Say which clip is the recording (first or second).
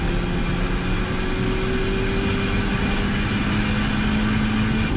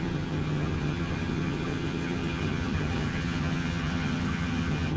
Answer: first